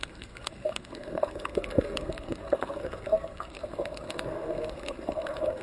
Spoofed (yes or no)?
yes